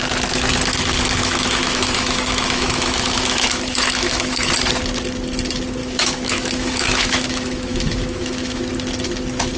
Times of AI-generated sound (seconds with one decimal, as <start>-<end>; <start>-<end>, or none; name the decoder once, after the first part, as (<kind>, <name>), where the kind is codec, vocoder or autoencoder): 1.2-4.5 (autoencoder, DAC-VAE); 5.8-8.6